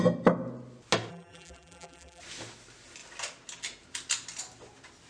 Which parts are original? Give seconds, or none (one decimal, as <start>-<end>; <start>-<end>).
0.0-1.1; 2.2-5.1